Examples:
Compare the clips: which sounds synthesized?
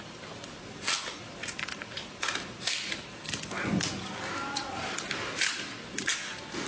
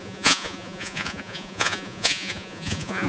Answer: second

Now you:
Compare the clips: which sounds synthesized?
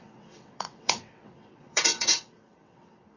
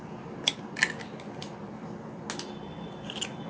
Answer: first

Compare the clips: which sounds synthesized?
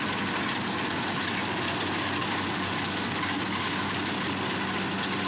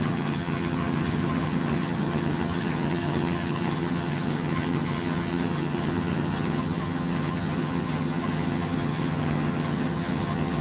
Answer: second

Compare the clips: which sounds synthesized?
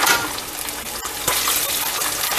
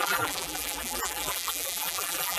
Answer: second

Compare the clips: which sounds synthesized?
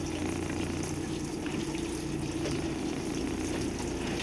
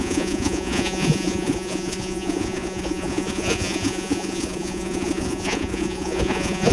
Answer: second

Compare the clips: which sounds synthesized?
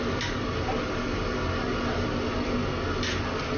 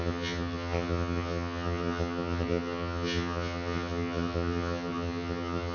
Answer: second